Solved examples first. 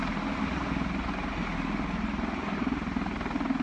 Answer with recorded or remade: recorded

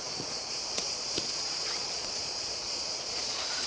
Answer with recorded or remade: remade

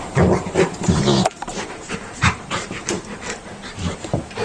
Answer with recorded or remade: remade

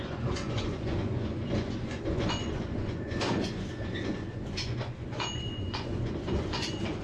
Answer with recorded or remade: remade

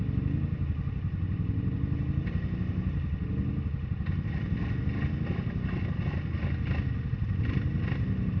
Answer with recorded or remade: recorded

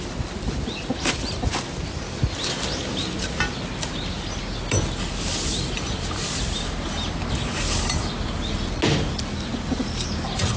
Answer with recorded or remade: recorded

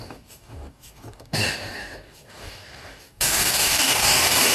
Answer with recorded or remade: remade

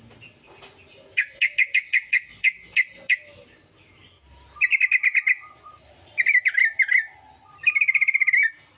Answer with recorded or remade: recorded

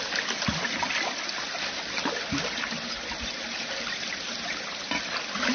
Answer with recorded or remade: recorded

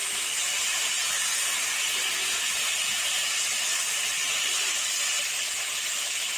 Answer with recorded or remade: recorded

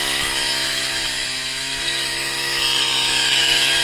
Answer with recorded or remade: remade